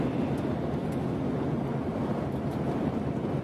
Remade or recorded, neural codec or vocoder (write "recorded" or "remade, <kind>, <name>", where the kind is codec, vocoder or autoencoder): recorded